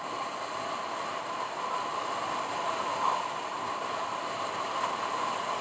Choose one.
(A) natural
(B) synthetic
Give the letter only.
A